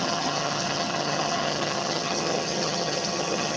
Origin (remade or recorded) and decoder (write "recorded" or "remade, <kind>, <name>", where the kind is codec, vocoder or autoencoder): remade, vocoder, HiFi-GAN